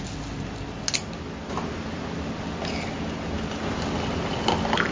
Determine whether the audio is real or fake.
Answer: real